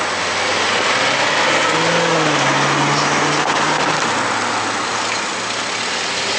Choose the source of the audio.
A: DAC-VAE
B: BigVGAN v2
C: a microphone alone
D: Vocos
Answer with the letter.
C